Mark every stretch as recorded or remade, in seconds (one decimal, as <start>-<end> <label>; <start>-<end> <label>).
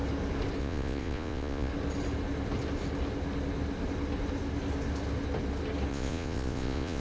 0.0-0.6 recorded; 0.6-1.7 remade; 1.7-5.9 recorded; 5.9-7.0 remade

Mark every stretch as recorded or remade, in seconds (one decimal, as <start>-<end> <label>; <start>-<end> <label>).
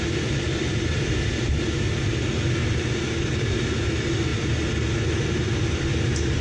0.0-2.6 recorded; 2.6-3.9 remade; 3.9-6.4 recorded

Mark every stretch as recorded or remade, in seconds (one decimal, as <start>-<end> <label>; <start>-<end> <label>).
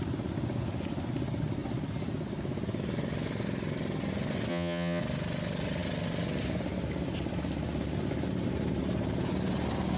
0.0-4.5 recorded; 4.5-5.0 remade; 5.0-10.0 recorded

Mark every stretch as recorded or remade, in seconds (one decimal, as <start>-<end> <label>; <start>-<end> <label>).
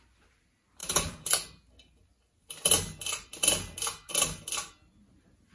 0.0-5.5 recorded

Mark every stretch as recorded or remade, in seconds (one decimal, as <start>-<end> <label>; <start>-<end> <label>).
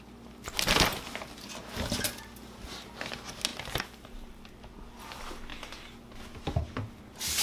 0.0-3.5 recorded; 3.5-5.0 remade; 5.0-7.4 recorded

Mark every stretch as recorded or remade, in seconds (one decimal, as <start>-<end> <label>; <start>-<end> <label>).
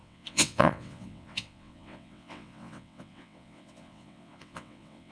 0.0-5.1 remade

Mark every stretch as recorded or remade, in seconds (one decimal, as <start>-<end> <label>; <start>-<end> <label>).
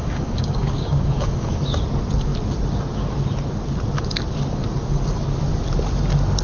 0.0-1.5 remade; 1.5-6.4 recorded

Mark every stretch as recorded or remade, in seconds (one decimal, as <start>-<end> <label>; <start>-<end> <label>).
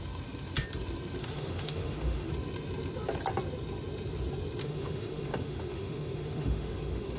0.0-1.2 recorded; 1.2-2.3 remade; 2.3-4.6 recorded; 4.6-7.2 remade